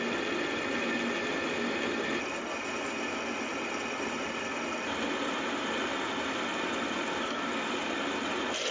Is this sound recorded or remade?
recorded